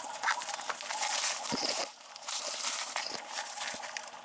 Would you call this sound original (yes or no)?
yes